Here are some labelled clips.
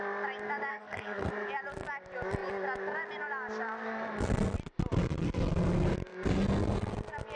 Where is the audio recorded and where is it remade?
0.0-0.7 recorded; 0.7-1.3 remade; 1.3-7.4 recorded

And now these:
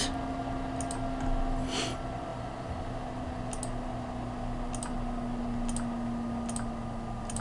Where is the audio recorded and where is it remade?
0.0-7.4 recorded

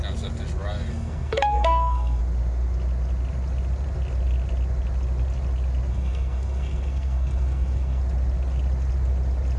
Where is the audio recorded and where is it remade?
0.0-0.9 recorded; 0.9-2.2 remade; 2.2-5.9 recorded; 5.9-8.0 remade; 8.0-9.6 recorded

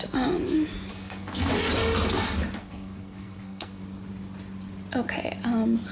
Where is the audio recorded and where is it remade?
0.0-0.9 recorded; 0.9-1.5 remade; 1.5-2.6 recorded; 2.6-3.8 remade; 3.8-5.9 recorded

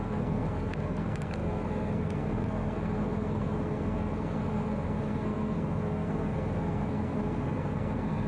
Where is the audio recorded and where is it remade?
0.0-8.3 remade

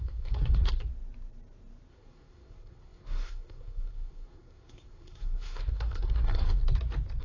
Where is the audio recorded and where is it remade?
0.0-0.9 remade; 0.9-1.9 recorded; 1.9-6.6 remade; 6.6-7.2 recorded

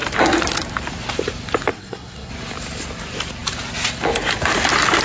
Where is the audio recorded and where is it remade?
0.0-1.7 recorded; 1.7-2.3 remade; 2.3-5.0 recorded